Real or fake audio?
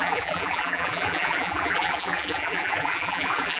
fake